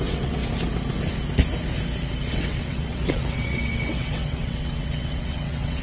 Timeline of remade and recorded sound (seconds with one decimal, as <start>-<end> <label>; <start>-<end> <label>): 0.0-0.4 remade; 0.4-2.3 recorded; 2.3-5.8 remade